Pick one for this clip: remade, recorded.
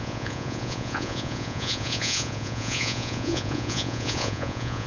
remade